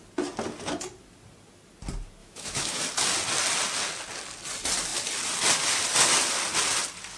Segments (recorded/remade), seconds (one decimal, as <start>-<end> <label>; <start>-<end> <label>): 0.0-2.2 recorded; 2.2-2.8 remade; 2.8-7.2 recorded